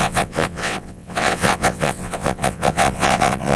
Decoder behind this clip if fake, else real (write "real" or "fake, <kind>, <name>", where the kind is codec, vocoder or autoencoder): fake, vocoder, WaveNeXt